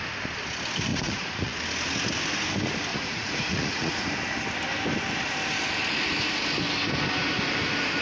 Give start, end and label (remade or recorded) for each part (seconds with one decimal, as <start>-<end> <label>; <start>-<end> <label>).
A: 0.0-0.9 recorded; 0.9-1.6 remade; 1.6-2.9 recorded; 2.9-3.9 remade; 3.9-8.0 recorded